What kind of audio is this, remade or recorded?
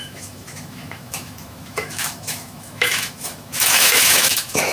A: remade